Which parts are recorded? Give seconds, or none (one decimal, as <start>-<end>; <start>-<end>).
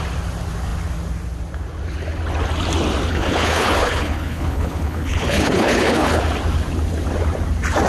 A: 0.0-3.1; 6.2-7.9